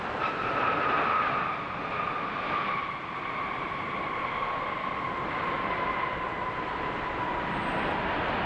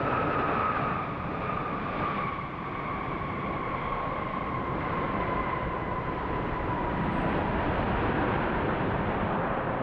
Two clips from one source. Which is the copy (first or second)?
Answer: second